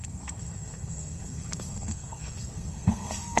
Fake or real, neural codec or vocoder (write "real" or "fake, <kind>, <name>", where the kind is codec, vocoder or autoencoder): fake, codec, SNAC